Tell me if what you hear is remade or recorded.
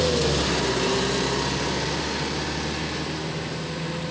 recorded